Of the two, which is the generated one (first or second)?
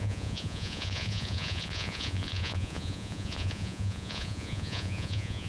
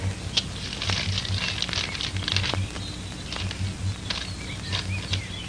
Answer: first